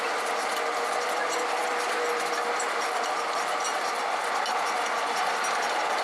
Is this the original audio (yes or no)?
yes